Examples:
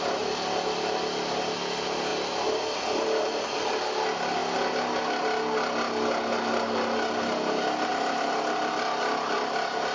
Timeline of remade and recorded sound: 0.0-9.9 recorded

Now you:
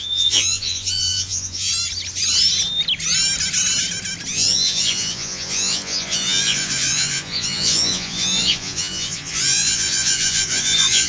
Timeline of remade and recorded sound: 0.0-1.7 remade; 1.7-4.3 recorded; 4.3-11.1 remade

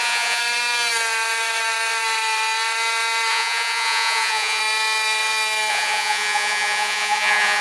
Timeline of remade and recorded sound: 0.0-0.4 remade; 0.4-3.3 recorded; 3.3-4.6 remade; 4.6-5.7 recorded; 5.7-7.6 remade

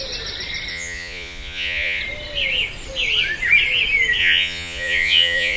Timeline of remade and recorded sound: 0.0-0.7 recorded; 0.7-2.0 remade; 2.0-4.2 recorded; 4.2-5.6 remade

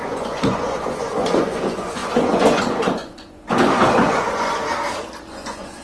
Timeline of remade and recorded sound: 0.0-4.6 remade; 4.6-5.3 recorded; 5.3-5.8 remade